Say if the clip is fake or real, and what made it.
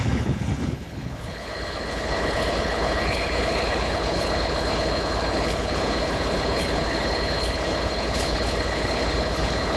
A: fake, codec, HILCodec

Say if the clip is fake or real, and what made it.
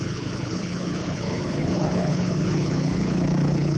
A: fake, codec, HILCodec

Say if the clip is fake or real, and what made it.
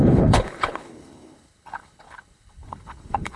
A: fake, codec, HILCodec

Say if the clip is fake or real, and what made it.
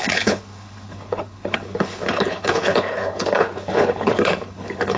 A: fake, codec, HILCodec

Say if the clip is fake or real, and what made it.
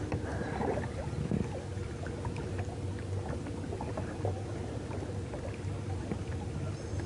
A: real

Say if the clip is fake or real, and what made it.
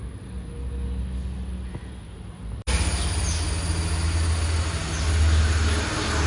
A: real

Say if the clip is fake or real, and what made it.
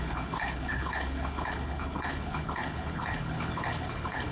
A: fake, codec, HILCodec